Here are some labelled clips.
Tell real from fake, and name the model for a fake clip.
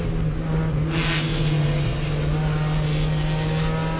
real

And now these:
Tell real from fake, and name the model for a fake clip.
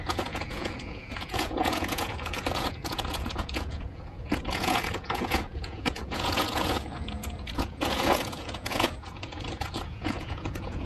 fake, vocoder, Vocos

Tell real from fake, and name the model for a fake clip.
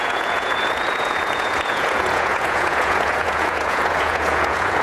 fake, vocoder, Vocos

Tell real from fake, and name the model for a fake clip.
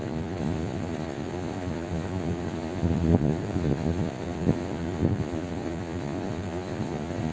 fake, vocoder, Vocos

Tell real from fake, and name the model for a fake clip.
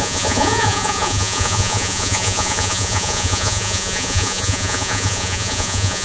fake, vocoder, Vocos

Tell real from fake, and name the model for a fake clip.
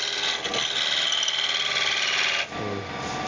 real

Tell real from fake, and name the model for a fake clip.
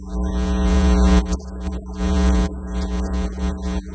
fake, vocoder, Vocos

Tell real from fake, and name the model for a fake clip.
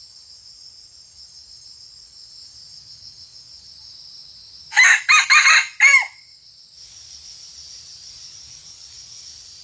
real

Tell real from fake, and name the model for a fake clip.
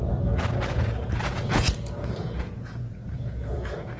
fake, vocoder, Vocos